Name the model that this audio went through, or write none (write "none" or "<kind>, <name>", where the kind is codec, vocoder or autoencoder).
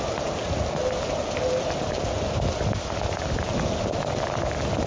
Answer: none